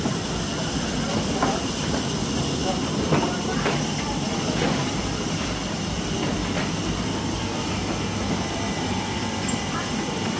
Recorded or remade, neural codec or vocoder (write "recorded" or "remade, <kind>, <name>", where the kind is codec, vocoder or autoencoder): remade, vocoder, BigVGAN v2